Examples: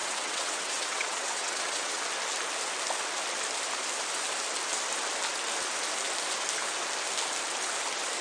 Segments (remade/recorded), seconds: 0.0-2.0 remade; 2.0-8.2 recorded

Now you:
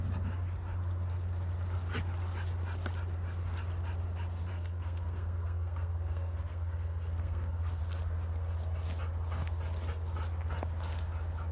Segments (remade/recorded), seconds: 0.0-4.5 recorded; 4.5-7.8 remade; 7.8-11.5 recorded